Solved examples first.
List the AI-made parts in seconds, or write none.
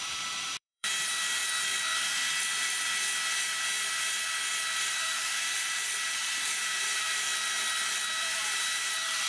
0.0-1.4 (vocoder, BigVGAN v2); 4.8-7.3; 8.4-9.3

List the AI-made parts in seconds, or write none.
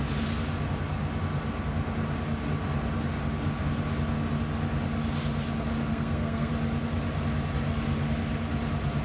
5.9-6.5 (codec, SNAC)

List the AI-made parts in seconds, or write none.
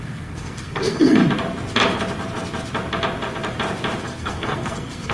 0.0-1.2 (codec, SNAC); 4.0-5.1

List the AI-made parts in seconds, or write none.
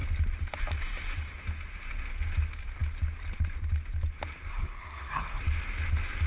4.5-5.4 (codec, SNAC)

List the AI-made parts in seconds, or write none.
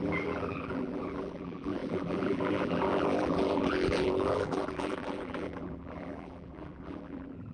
0.0-7.5 (vocoder, BigVGAN v2)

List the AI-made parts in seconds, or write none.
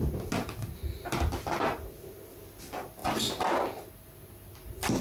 none